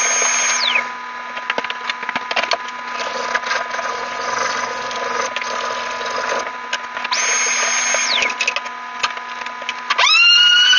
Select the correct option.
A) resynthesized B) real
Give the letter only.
B